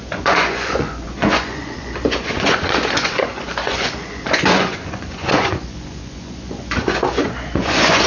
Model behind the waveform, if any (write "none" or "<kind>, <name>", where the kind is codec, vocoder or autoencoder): vocoder, Vocos